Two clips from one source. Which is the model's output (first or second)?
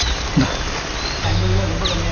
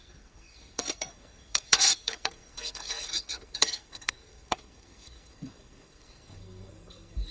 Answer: second